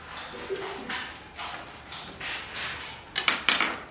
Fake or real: real